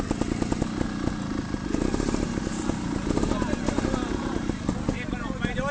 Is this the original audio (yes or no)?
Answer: yes